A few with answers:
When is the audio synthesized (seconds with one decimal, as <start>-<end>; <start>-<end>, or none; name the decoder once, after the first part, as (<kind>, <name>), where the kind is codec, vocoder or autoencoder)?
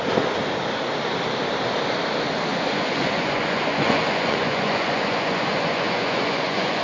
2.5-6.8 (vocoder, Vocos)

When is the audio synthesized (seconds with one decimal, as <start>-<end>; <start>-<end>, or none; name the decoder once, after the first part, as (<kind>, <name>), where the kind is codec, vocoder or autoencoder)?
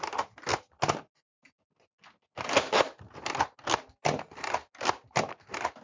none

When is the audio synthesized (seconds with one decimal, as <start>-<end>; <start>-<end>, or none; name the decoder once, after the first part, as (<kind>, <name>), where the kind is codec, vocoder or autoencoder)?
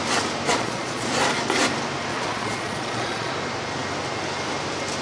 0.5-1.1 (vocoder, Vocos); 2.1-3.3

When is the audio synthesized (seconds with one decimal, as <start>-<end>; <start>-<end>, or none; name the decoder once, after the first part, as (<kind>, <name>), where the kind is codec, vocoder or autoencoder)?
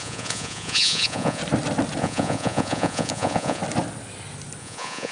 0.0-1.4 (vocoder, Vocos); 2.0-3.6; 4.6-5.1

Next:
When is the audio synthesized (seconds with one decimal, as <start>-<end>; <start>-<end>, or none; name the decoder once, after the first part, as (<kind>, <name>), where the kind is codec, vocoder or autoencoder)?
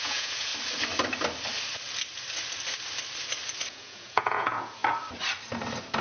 0.0-0.5 (vocoder, Vocos); 3.7-4.8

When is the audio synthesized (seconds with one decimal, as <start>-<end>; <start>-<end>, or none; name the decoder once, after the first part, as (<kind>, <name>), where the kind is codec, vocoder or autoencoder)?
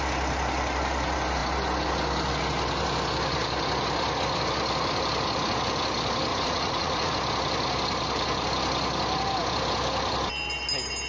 6.3-7.1 (vocoder, Vocos)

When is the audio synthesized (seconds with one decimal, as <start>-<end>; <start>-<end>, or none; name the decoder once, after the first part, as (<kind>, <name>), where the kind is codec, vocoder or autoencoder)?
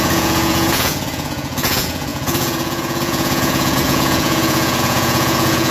0.0-5.7 (vocoder, Vocos)